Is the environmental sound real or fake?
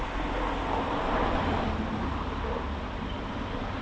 real